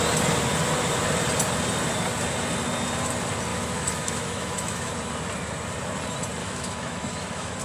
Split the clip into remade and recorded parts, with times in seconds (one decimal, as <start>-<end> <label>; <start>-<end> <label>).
0.0-3.5 recorded; 3.5-4.9 remade; 4.9-6.4 recorded; 6.4-7.6 remade